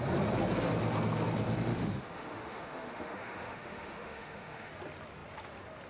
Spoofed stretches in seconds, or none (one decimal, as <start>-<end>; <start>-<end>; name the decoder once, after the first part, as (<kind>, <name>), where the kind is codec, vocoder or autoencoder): 1.7-4.7 (autoencoder, DAC-VAE)